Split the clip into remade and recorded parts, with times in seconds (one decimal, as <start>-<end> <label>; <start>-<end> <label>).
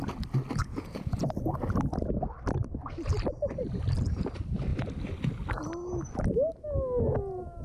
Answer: 0.0-0.6 recorded; 0.6-1.2 remade; 1.2-7.6 recorded